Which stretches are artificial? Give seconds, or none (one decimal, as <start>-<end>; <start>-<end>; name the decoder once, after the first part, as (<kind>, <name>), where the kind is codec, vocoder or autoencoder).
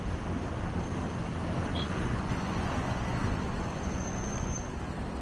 1.7-4.8 (vocoder, Vocos)